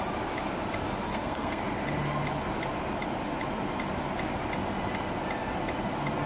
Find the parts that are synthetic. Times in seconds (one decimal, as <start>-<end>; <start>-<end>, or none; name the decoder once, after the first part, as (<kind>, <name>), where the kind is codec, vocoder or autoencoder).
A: 1.1-1.6 (codec, SNAC)